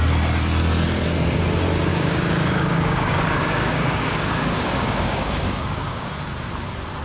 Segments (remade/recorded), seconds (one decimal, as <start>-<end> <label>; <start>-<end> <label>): 0.0-1.9 recorded; 1.9-6.1 remade; 6.1-7.0 recorded